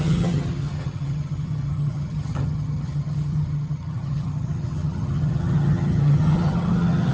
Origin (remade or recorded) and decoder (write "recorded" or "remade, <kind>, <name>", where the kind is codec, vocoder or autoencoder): remade, vocoder, HiFi-GAN